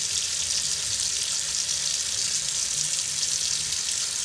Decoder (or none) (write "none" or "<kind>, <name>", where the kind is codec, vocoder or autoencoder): none